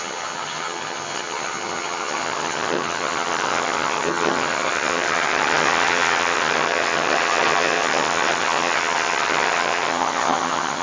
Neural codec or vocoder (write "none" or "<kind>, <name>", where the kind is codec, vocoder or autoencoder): vocoder, HiFi-GAN